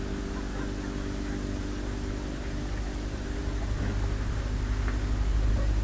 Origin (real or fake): real